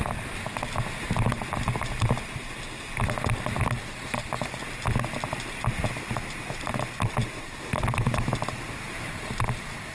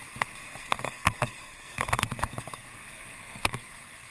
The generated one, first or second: second